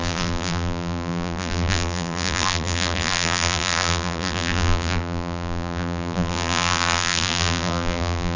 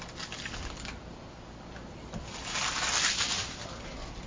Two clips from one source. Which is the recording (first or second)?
second